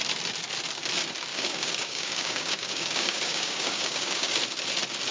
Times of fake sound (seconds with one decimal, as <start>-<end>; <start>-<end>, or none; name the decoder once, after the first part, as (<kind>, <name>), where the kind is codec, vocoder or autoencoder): 1.3-4.4 (codec, DAC)